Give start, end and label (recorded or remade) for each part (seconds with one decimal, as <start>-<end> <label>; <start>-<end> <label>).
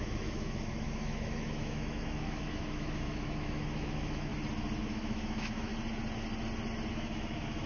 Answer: 0.0-4.3 remade; 4.3-4.8 recorded; 4.8-5.7 remade; 5.7-6.9 recorded; 6.9-7.7 remade